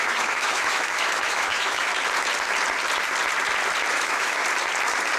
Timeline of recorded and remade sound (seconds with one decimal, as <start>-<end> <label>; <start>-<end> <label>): 0.0-1.9 remade; 1.9-3.9 recorded; 3.9-4.4 remade; 4.4-5.2 recorded